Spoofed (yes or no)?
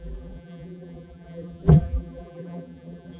yes